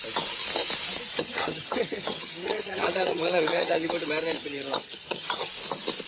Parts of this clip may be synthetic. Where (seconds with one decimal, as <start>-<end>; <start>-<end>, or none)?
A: 1.1-3.9; 4.4-5.5